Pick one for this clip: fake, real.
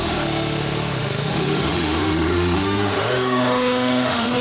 fake